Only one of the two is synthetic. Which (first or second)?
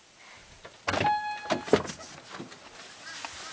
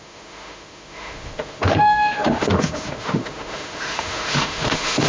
second